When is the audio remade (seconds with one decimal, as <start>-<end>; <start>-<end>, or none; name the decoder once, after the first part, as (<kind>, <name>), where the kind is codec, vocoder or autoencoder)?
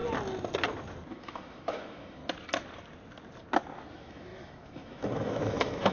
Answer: 1.1-2.2 (autoencoder, DAC-VAE); 3.9-5.9